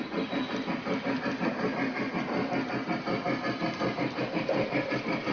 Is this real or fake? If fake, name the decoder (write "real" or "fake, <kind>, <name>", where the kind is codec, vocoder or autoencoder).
real